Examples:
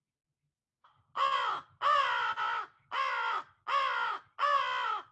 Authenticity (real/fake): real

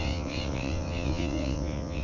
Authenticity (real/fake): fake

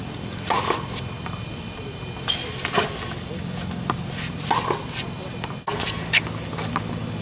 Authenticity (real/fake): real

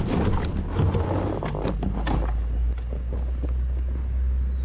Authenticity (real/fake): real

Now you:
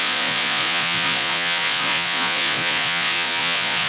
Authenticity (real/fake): fake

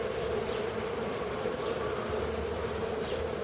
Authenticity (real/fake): real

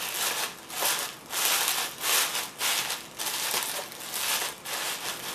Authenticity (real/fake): real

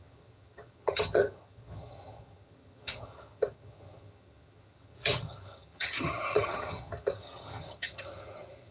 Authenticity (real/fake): fake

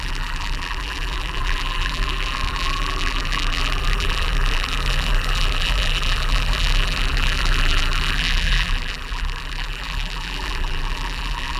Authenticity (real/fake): fake